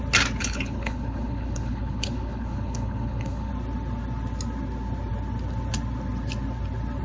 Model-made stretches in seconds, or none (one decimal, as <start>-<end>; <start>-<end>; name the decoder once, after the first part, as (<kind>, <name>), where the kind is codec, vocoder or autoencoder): 0.4-3.5 (codec, HILCodec)